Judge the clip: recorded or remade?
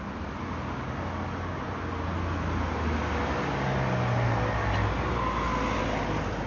recorded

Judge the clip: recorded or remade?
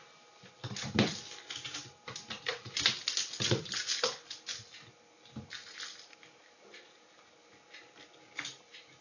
recorded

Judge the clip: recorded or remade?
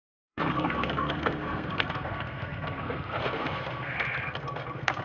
remade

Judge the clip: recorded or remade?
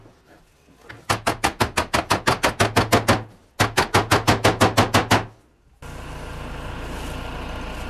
recorded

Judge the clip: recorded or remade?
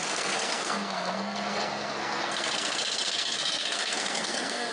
remade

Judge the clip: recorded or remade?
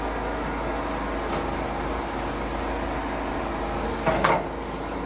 recorded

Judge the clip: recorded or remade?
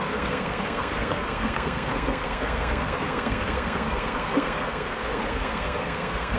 remade